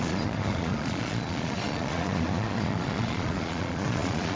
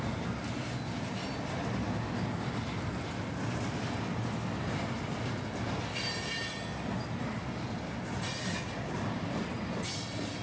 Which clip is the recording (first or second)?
second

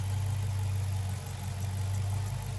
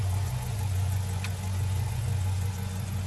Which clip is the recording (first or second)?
first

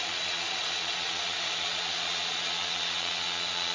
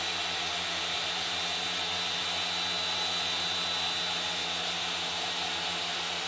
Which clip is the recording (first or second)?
second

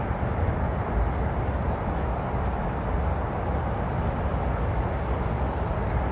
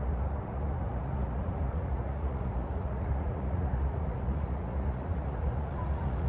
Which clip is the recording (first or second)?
first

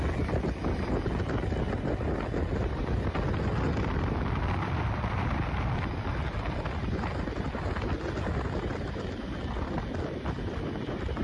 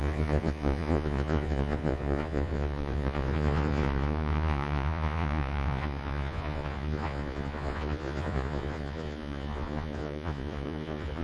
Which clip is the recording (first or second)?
first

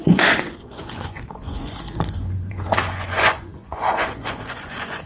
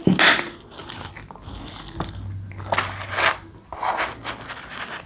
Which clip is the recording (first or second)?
second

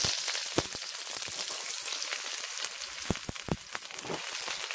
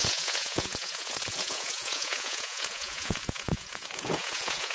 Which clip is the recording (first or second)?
first